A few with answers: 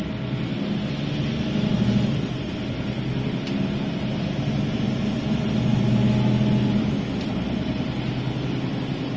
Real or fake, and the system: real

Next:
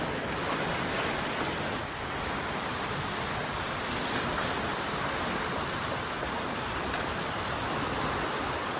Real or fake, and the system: real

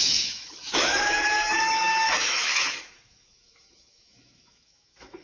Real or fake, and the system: fake, autoencoder, DAC-VAE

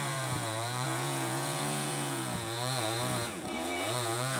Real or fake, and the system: fake, vocoder, Vocos